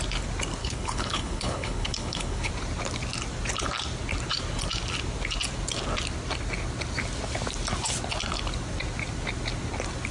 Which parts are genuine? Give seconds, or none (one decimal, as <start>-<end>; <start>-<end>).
0.0-0.6; 2.5-10.1